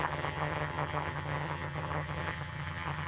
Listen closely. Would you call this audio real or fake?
fake